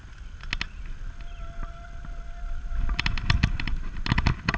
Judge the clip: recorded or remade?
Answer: recorded